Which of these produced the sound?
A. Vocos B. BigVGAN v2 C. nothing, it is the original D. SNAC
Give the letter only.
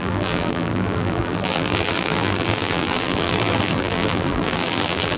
B